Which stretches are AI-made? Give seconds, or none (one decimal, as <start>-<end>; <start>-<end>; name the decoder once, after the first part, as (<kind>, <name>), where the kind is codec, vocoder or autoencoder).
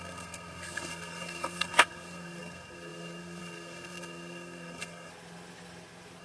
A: 0.0-5.1 (codec, SNAC)